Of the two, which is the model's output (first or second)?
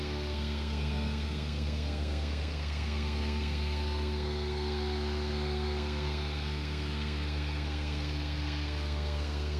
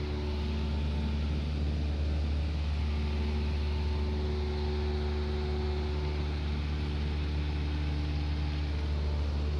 first